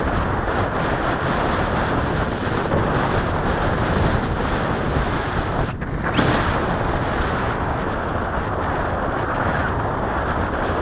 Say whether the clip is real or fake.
real